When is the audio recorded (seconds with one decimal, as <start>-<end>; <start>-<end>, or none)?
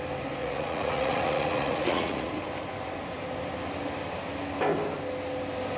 0.0-0.4; 2.3-5.8